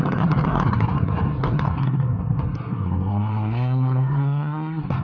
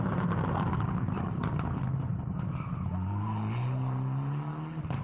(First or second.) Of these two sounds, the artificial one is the first